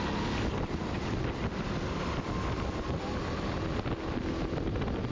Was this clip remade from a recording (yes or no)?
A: no